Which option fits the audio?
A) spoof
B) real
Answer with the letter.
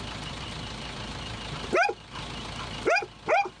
B